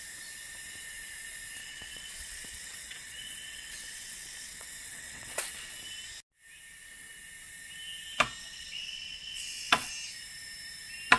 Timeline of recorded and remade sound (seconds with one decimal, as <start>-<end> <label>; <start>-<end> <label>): 0.0-1.6 recorded; 1.6-5.7 remade; 5.7-8.4 recorded; 8.4-9.9 remade; 9.9-11.2 recorded